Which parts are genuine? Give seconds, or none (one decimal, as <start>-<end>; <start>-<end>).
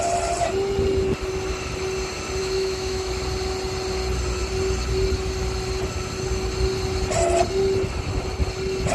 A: 0.0-2.4; 3.1-8.9